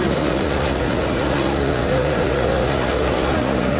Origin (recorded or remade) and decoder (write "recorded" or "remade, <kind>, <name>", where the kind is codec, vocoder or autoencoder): remade, vocoder, Vocos